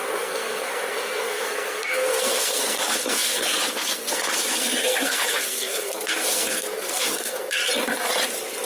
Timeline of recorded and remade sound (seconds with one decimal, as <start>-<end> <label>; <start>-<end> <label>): 0.0-7.6 remade; 7.6-8.7 recorded